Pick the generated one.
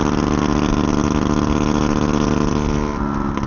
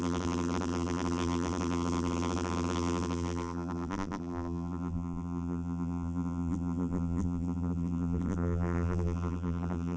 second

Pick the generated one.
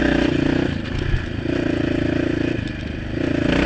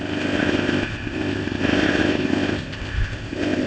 second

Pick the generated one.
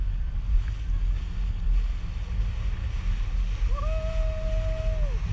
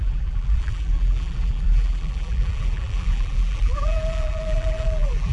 second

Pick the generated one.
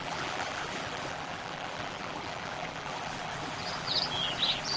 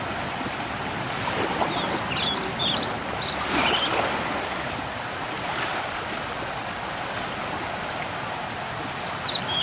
first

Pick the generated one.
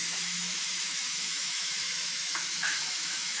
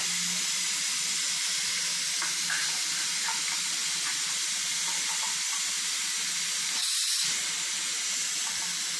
first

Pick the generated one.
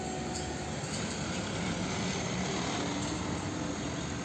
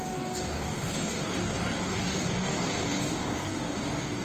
second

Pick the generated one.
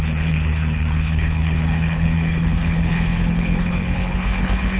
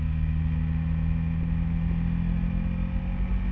first